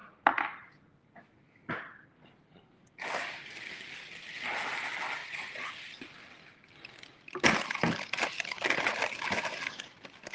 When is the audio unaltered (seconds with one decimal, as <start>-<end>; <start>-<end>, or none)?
0.0-5.2; 5.7-10.3